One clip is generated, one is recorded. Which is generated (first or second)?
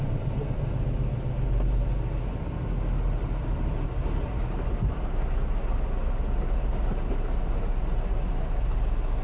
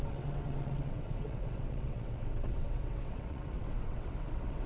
second